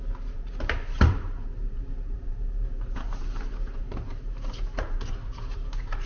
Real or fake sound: fake